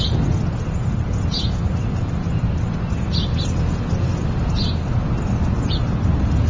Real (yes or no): yes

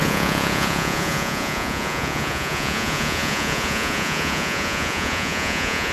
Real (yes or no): no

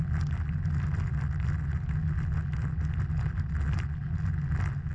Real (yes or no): yes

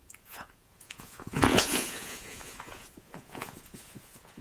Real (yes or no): no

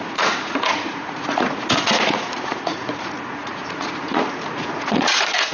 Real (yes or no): no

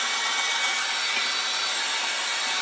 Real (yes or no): yes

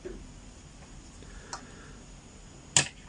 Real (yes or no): yes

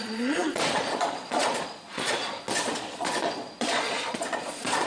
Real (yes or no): no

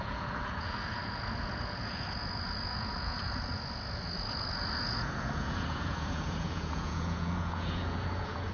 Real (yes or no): no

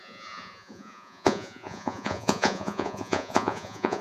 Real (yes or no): no